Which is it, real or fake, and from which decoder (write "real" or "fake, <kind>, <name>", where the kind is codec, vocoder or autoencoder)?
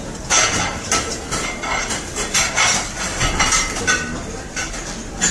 real